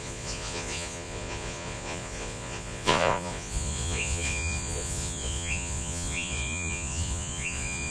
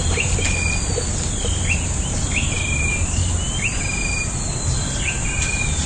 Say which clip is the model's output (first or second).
first